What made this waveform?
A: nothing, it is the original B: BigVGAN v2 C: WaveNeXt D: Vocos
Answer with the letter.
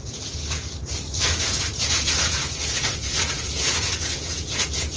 D